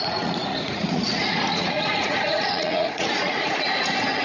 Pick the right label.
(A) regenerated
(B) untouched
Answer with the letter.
A